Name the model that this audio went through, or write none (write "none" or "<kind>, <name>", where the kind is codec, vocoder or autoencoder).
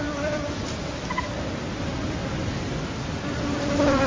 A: none